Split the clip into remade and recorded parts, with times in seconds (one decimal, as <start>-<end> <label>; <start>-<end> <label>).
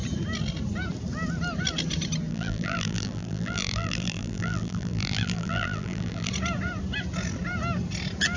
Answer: 0.0-2.3 recorded; 2.3-6.3 remade; 6.3-8.4 recorded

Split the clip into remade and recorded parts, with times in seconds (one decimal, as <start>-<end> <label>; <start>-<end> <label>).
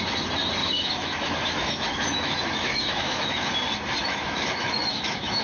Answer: 0.0-0.6 recorded; 0.6-3.5 remade; 3.5-4.0 recorded; 4.0-5.4 remade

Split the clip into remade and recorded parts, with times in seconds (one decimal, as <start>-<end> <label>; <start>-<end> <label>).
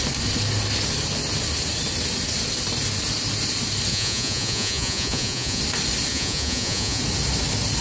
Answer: 0.0-3.9 recorded; 3.9-5.6 remade; 5.6-6.1 recorded; 6.1-7.0 remade; 7.0-7.8 recorded